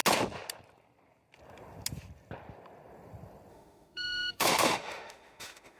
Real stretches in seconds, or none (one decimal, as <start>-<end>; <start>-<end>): 0.0-3.5